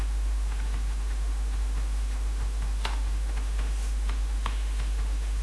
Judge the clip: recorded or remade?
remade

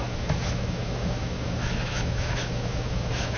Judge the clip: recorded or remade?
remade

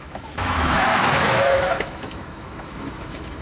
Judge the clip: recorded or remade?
remade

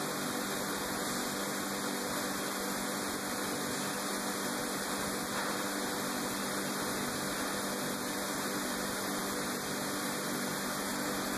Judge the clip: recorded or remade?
recorded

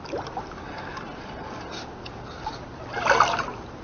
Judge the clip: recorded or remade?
recorded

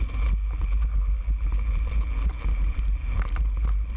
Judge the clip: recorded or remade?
recorded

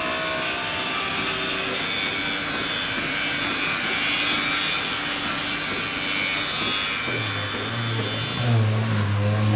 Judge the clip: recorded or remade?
recorded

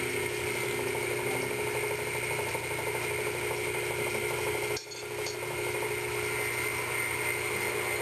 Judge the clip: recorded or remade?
recorded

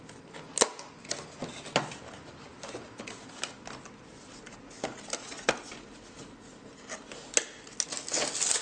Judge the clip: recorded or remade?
recorded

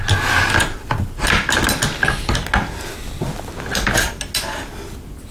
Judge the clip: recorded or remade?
recorded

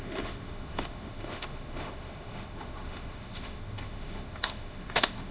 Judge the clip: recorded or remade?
remade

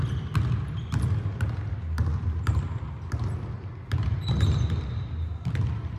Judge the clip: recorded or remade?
recorded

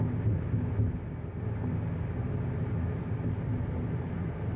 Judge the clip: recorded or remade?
recorded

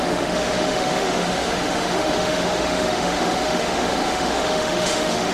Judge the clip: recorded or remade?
remade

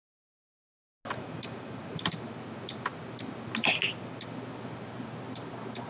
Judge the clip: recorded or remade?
recorded